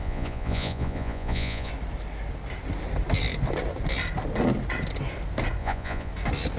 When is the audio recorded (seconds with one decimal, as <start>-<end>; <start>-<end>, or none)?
1.7-5.6; 6.1-6.6